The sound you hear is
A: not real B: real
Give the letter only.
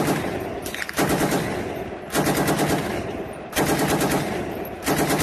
A